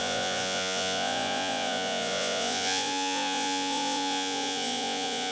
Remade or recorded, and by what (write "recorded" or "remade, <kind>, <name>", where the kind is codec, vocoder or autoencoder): remade, vocoder, Vocos